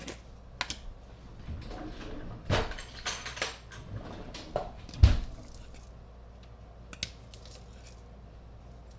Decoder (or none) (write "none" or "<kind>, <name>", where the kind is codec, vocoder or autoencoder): none